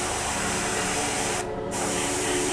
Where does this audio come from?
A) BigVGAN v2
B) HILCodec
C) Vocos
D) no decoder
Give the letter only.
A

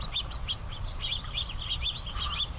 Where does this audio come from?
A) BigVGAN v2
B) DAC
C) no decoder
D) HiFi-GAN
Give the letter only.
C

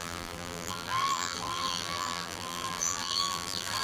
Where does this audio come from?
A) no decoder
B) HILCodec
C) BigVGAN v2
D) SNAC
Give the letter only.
C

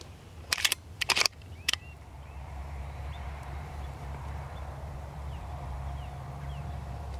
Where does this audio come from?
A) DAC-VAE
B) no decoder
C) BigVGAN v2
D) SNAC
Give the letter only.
C